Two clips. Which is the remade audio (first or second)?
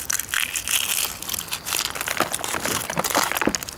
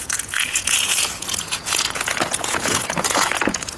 second